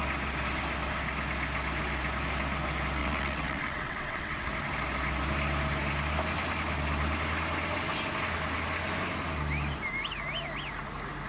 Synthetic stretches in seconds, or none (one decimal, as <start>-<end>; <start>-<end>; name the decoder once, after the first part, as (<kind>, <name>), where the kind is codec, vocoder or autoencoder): 3.0-4.5 (vocoder, WaveNeXt)